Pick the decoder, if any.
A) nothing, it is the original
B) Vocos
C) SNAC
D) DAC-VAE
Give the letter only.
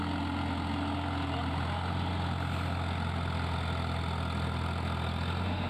A